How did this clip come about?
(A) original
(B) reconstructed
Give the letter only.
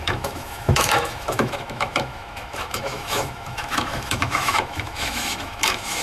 B